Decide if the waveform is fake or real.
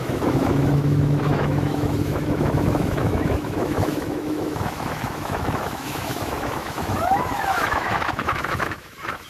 fake